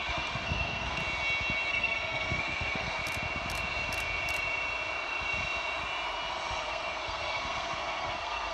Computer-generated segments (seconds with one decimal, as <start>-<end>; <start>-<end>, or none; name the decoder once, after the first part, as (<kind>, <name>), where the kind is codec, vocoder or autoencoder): 0.0-1.0 (codec, SNAC); 1.7-3.0; 6.3-8.5